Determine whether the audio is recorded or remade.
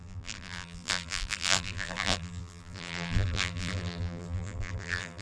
remade